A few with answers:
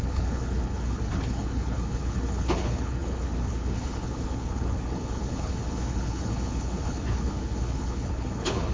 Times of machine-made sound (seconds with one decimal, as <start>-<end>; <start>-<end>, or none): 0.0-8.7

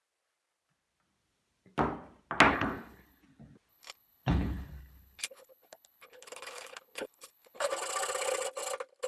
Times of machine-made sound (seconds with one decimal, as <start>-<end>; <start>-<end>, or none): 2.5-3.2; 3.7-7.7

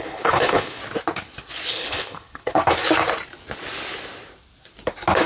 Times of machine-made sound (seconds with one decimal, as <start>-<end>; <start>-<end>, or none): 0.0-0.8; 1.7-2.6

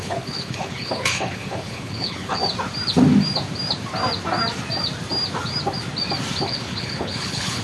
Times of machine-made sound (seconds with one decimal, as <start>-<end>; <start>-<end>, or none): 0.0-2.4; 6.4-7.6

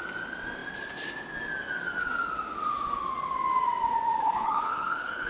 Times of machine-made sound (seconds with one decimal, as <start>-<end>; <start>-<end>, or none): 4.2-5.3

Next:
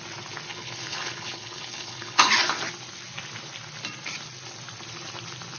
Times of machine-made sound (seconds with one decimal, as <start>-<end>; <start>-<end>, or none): 0.5-2.3